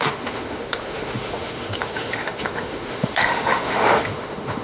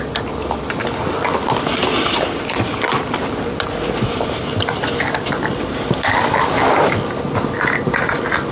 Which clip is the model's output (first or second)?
first